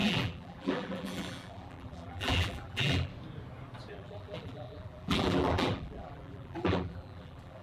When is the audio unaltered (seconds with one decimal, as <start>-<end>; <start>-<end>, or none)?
3.1-3.9